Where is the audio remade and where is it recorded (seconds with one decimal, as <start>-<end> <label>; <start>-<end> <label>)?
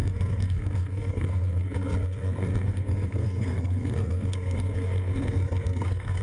0.0-6.2 remade